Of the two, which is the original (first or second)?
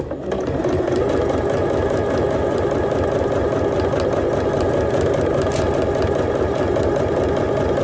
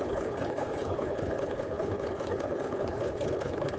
first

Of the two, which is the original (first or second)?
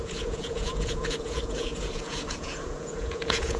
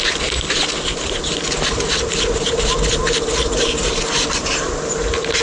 second